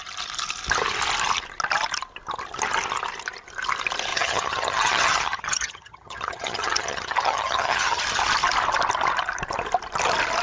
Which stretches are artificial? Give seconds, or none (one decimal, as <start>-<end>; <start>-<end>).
4.1-8.0